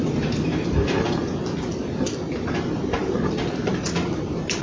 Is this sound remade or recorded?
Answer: recorded